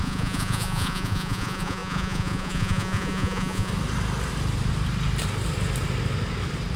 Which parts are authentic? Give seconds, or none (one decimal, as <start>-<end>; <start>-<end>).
3.7-6.8